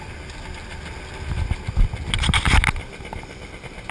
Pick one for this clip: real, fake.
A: real